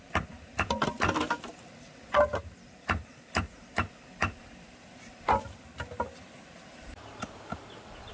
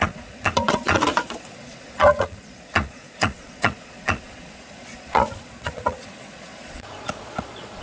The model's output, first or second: second